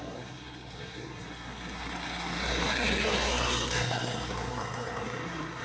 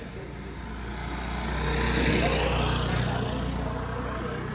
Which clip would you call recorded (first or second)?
second